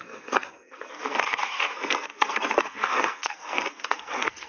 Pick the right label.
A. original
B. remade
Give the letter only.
B